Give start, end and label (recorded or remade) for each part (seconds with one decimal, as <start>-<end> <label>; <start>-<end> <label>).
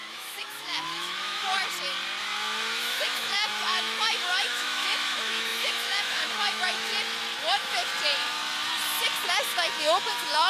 0.0-1.5 remade; 1.5-2.2 recorded; 2.2-6.9 remade; 6.9-7.4 recorded; 7.4-7.9 remade; 7.9-9.4 recorded; 9.4-10.5 remade